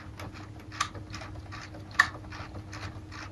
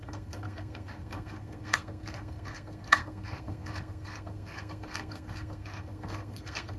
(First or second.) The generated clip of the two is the second